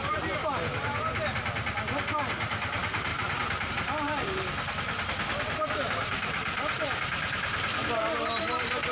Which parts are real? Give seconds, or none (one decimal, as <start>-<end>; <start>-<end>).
0.4-2.0; 4.5-8.2